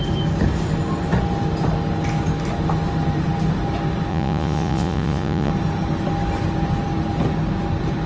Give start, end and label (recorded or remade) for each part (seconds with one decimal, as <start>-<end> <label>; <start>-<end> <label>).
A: 0.0-4.1 recorded; 4.1-5.5 remade; 5.5-8.1 recorded